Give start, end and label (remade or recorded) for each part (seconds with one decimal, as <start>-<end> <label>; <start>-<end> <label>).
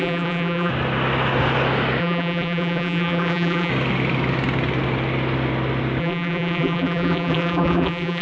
0.0-0.7 remade; 0.7-2.0 recorded; 2.0-3.7 remade; 3.7-6.0 recorded; 6.0-8.2 remade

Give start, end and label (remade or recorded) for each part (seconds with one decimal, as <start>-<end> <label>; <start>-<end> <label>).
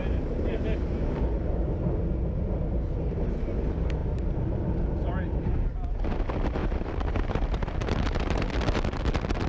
0.0-6.6 recorded; 6.6-8.5 remade; 8.5-9.5 recorded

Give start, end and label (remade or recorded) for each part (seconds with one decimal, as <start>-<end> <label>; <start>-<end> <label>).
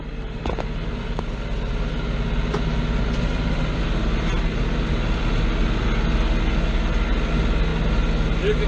0.0-8.7 recorded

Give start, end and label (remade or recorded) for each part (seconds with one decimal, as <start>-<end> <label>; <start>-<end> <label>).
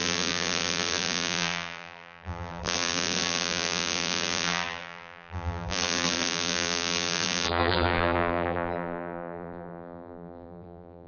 0.0-11.1 remade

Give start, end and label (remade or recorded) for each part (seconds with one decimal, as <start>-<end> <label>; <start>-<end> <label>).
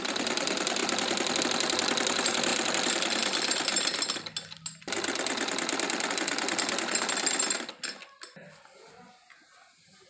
0.0-10.1 recorded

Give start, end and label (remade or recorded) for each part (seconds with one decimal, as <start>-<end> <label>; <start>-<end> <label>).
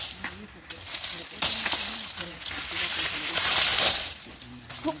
0.0-2.9 recorded; 2.9-4.3 remade; 4.3-5.0 recorded